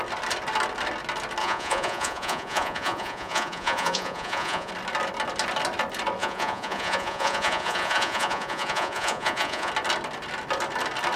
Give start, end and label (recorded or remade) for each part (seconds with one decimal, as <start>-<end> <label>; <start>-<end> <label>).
0.0-1.4 recorded; 1.4-4.7 remade; 4.7-6.2 recorded; 6.2-9.7 remade; 9.7-11.2 recorded